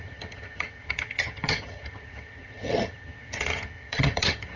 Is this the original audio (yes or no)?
no